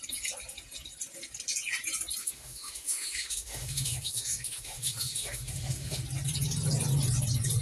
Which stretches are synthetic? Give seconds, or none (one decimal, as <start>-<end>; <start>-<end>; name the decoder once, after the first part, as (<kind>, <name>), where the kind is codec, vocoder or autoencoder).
2.2-6.0 (autoencoder, DAC-VAE)